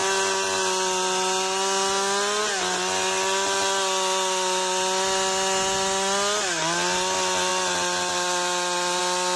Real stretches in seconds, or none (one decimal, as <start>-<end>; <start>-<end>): 0.0-9.4